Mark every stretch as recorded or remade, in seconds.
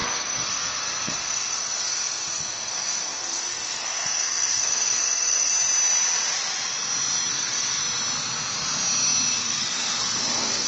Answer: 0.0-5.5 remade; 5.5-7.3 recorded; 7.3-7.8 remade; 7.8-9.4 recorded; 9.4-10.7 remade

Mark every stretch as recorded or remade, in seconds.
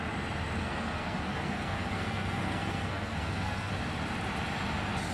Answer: 0.0-0.6 recorded; 0.6-3.7 remade; 3.7-5.1 recorded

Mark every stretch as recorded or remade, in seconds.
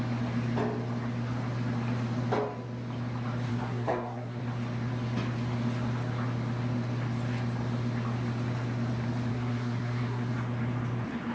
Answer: 0.0-3.5 recorded; 3.5-4.4 remade; 4.4-9.3 recorded; 9.3-10.3 remade; 10.3-11.3 recorded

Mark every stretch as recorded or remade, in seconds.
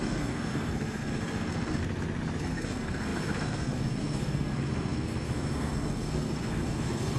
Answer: 0.0-1.8 remade; 1.8-2.4 recorded; 2.4-7.2 remade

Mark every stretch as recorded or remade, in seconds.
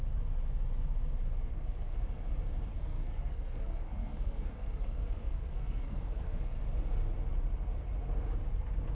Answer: 0.0-1.5 recorded; 1.5-2.0 remade; 2.0-2.7 recorded; 2.7-6.6 remade; 6.6-8.9 recorded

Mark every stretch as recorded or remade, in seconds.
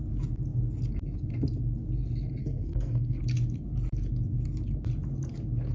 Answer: 0.0-2.4 recorded; 2.4-3.2 remade; 3.2-5.7 recorded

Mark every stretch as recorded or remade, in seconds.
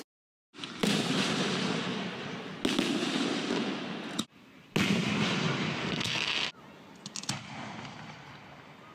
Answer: 0.0-5.8 recorded; 5.8-6.5 remade; 6.5-8.9 recorded